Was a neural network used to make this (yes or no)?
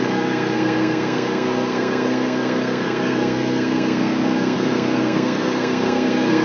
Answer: yes